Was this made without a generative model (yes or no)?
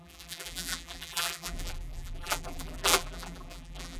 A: no